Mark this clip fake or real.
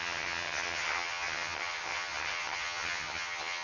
fake